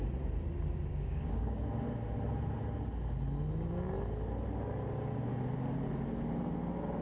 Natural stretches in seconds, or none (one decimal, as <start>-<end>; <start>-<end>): 0.0-0.9; 1.6-7.0